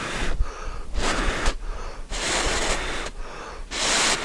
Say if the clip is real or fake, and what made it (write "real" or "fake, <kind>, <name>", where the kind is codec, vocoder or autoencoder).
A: fake, vocoder, BigVGAN v2